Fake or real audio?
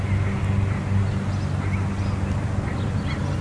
real